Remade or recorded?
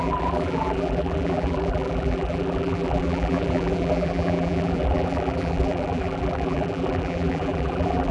remade